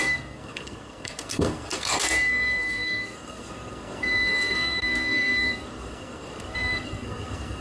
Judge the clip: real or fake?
fake